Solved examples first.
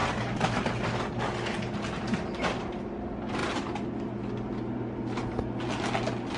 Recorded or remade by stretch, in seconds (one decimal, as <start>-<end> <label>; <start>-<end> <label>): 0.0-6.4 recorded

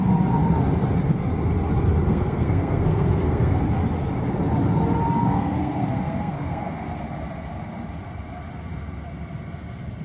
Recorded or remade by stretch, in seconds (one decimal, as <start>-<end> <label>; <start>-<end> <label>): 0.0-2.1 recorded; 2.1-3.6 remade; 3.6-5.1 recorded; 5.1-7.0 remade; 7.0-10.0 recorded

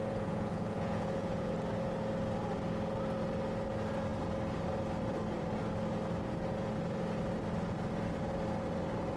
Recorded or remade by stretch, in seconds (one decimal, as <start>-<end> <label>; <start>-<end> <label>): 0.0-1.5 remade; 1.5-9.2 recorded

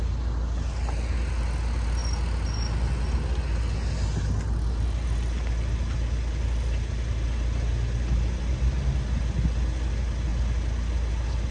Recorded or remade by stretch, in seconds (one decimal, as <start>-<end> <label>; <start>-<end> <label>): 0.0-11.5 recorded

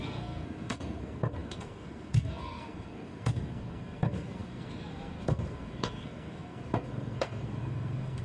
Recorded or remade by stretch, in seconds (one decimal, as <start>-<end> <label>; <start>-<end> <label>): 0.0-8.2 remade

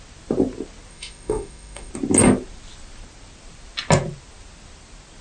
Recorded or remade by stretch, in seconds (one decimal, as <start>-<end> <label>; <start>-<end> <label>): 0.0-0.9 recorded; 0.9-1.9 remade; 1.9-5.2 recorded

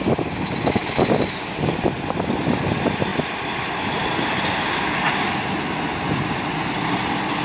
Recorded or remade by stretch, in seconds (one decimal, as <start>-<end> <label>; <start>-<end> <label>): 0.0-7.4 recorded

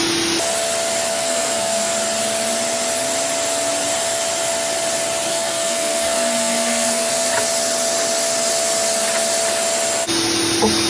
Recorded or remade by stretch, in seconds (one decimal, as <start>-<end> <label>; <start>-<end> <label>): 0.0-1.1 recorded; 1.1-1.9 remade; 1.9-5.3 recorded; 5.3-7.1 remade; 7.1-10.9 recorded